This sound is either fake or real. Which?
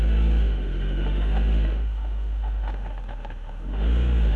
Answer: fake